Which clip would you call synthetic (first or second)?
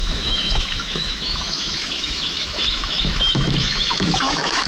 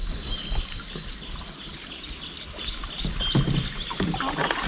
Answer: first